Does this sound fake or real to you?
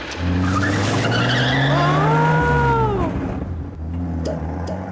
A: real